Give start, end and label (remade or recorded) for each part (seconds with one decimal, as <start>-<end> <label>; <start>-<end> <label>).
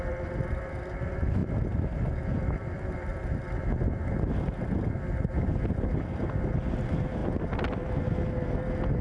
0.0-9.0 recorded